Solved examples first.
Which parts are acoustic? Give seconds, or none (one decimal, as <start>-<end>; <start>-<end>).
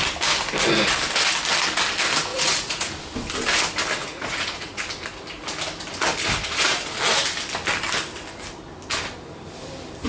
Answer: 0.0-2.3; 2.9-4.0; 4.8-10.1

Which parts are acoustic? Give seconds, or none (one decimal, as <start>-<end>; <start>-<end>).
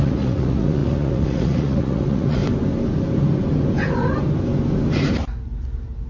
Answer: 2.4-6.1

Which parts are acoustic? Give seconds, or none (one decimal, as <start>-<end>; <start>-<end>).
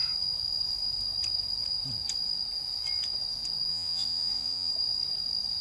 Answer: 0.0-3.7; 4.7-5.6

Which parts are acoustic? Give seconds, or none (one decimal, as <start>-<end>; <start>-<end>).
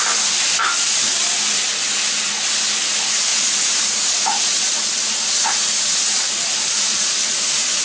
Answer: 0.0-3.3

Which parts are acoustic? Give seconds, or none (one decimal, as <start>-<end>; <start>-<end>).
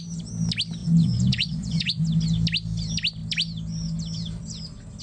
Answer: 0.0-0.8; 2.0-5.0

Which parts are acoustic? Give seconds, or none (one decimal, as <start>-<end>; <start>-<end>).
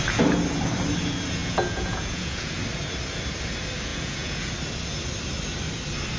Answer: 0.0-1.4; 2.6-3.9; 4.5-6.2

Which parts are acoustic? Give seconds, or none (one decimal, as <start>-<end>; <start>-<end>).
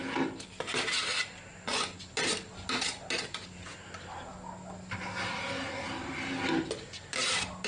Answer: 0.0-1.5; 2.1-7.7